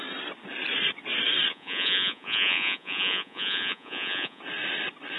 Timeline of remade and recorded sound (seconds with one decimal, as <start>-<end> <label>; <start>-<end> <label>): 0.0-1.5 recorded; 1.5-4.4 remade; 4.4-5.2 recorded